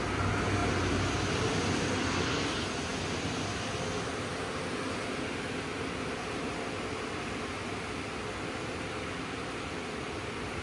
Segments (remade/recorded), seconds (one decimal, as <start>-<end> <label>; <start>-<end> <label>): 0.0-10.6 recorded